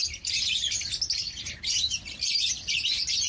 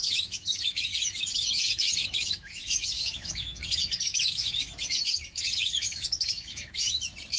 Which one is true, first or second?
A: first